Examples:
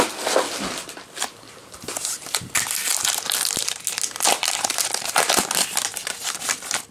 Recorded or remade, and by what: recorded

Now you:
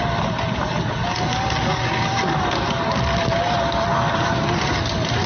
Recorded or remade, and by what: recorded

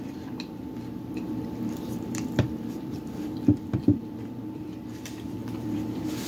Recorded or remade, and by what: remade, vocoder, BigVGAN v2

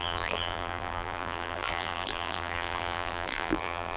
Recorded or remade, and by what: remade, vocoder, BigVGAN v2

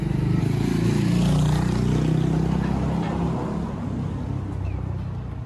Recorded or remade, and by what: recorded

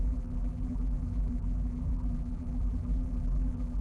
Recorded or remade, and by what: remade, vocoder, BigVGAN v2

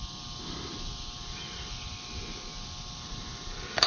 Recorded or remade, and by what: remade, vocoder, BigVGAN v2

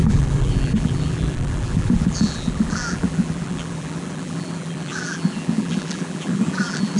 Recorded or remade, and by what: remade, vocoder, BigVGAN v2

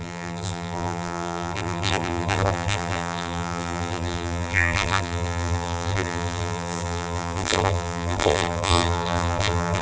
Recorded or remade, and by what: remade, vocoder, BigVGAN v2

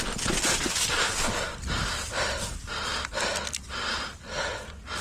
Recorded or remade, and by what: recorded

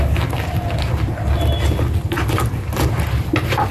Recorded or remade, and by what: recorded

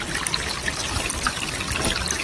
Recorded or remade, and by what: recorded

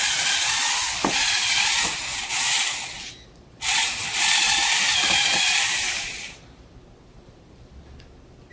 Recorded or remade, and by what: remade, vocoder, BigVGAN v2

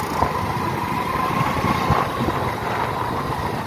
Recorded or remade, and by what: recorded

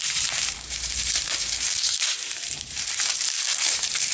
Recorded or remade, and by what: remade, vocoder, BigVGAN v2